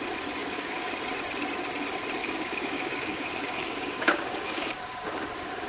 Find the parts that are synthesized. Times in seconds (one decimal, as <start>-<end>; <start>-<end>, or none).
0.4-0.9; 2.2-5.3